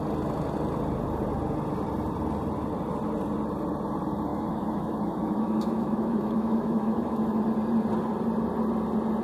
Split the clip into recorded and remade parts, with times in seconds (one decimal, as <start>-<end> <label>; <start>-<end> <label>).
0.0-4.3 recorded; 4.3-7.4 remade; 7.4-9.2 recorded